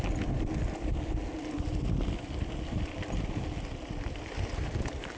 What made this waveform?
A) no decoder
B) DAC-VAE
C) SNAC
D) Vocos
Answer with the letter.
A